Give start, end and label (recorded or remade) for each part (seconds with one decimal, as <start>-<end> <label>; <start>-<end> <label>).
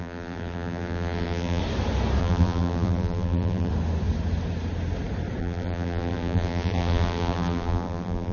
0.0-1.6 remade; 1.6-2.2 recorded; 2.2-3.7 remade; 3.7-5.4 recorded; 5.4-8.3 remade